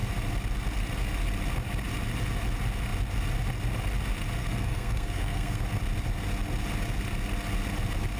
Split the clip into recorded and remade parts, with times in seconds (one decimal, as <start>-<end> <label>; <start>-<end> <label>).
0.0-4.4 recorded; 4.4-5.6 remade; 5.6-8.2 recorded